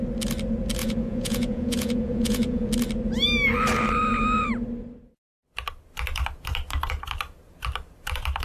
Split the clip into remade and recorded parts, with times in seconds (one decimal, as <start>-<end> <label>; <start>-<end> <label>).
0.0-0.8 recorded; 0.8-2.7 remade; 2.7-8.4 recorded